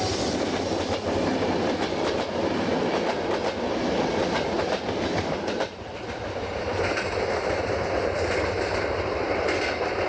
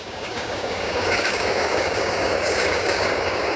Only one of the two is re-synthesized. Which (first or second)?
second